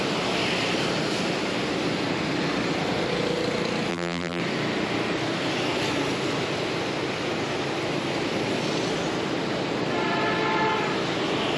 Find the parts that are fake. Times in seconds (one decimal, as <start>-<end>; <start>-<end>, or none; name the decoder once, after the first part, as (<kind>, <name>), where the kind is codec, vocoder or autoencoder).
3.9-4.4 (vocoder, BigVGAN v2)